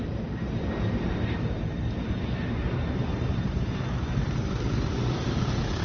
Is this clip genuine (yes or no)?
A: no